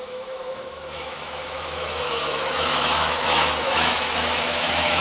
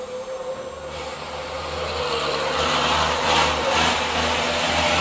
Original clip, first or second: second